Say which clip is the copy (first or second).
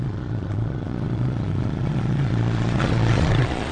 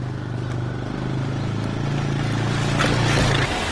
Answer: first